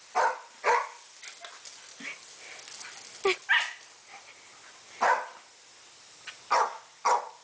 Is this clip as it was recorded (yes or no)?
yes